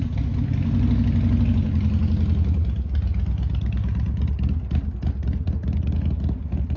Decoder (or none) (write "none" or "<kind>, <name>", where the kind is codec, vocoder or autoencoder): none